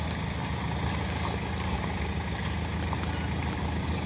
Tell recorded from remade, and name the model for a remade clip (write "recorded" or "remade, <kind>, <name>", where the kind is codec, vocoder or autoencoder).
recorded